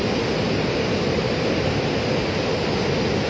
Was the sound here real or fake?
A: real